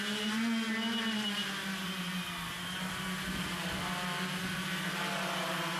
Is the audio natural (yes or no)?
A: yes